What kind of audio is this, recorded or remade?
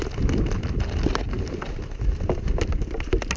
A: recorded